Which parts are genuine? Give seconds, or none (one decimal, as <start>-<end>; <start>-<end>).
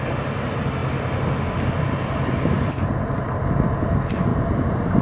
0.0-5.0